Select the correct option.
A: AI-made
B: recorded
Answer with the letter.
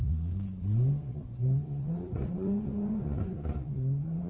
A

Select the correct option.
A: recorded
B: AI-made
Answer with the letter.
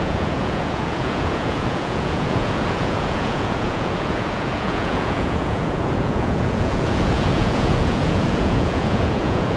B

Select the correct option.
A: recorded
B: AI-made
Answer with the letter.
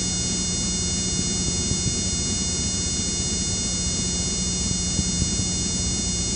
A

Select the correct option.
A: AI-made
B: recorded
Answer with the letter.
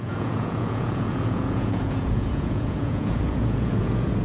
A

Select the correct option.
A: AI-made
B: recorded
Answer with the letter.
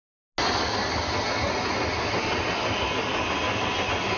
B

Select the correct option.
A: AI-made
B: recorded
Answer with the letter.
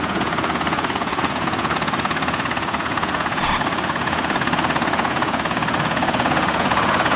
A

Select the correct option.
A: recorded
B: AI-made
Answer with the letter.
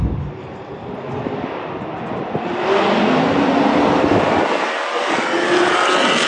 A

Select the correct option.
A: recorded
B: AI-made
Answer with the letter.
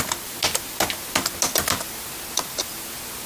A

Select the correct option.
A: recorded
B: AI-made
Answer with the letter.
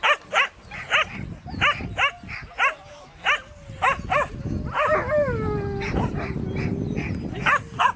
A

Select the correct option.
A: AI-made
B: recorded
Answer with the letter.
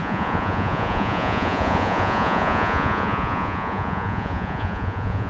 A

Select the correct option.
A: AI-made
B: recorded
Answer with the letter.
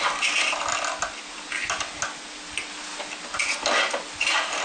B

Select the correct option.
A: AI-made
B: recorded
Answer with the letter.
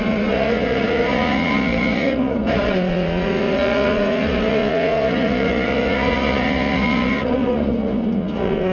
A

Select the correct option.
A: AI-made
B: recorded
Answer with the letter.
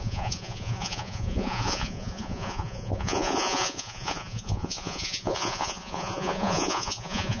A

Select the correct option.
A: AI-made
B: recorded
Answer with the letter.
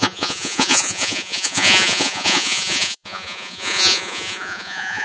A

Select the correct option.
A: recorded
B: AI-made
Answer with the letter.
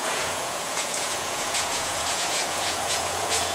B